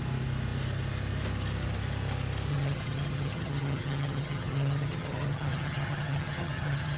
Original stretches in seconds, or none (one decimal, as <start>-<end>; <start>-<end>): 0.0-2.5